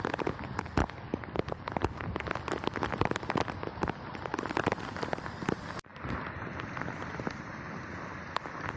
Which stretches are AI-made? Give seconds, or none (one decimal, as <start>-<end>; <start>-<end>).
0.0-0.8; 2.4-8.8